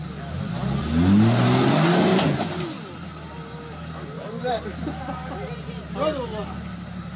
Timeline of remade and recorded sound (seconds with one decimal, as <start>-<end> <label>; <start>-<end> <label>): 0.0-7.2 recorded